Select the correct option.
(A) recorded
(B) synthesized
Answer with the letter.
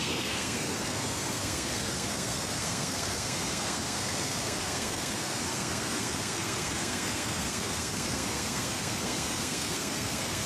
B